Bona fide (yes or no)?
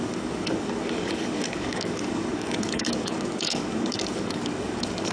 no